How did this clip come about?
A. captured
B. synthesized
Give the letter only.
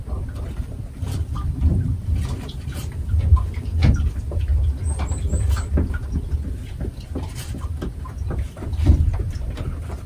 B